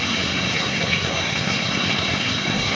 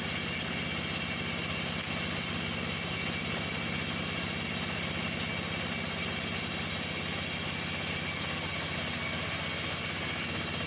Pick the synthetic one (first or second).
first